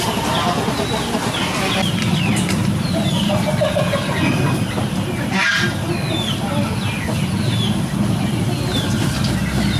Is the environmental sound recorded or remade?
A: recorded